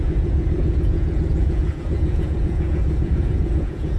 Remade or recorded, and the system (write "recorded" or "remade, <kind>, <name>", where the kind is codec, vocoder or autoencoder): remade, vocoder, Vocos